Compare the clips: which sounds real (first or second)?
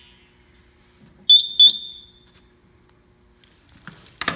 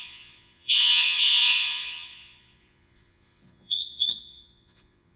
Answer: first